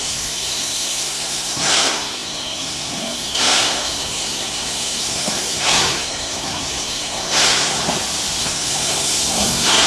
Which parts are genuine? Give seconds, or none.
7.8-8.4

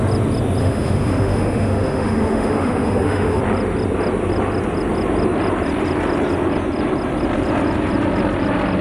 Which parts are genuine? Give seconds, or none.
0.0-0.6; 3.4-8.8

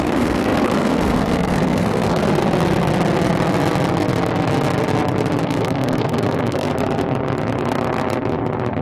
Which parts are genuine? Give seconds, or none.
2.2-5.4; 6.7-8.8